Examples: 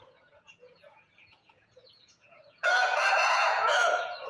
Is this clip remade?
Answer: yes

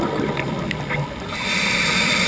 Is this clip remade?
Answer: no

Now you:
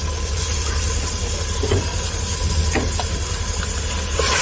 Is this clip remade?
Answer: no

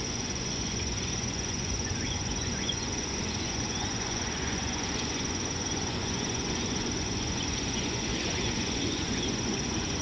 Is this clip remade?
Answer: yes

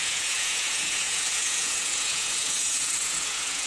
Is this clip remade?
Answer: yes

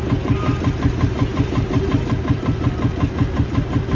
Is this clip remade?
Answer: no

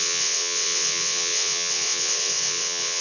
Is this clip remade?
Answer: yes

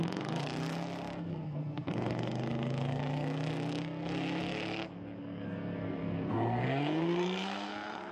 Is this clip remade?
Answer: yes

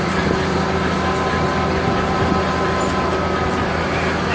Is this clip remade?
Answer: no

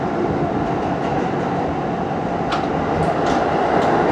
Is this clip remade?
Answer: no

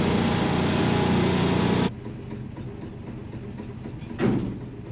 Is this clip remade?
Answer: no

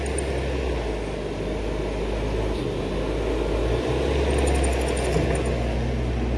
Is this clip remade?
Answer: no